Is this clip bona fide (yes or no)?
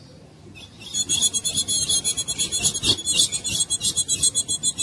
yes